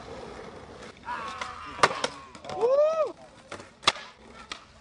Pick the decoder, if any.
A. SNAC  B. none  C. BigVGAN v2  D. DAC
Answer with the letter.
B